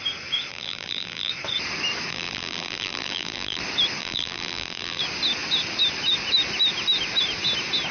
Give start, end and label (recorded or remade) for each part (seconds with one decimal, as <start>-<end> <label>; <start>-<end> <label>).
0.0-0.5 recorded; 0.5-1.3 remade; 1.3-2.1 recorded; 2.1-3.6 remade; 3.6-4.0 recorded; 4.0-5.0 remade; 5.0-7.9 recorded

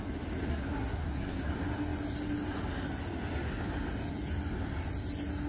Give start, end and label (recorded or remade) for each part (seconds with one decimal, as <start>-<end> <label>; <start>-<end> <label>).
0.0-0.5 recorded; 0.5-1.5 remade; 1.5-5.5 recorded

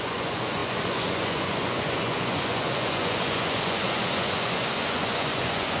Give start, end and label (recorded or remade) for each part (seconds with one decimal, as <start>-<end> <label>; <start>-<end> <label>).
0.0-5.8 remade

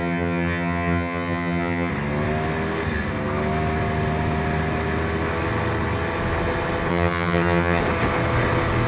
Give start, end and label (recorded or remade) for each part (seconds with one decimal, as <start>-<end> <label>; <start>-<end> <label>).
0.0-1.9 remade; 1.9-6.9 recorded; 6.9-7.8 remade; 7.8-8.9 recorded

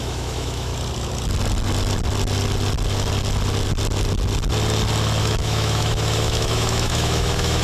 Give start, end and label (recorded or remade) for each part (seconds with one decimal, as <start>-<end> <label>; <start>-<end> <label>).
0.0-0.7 remade; 0.7-5.2 recorded; 5.2-7.6 remade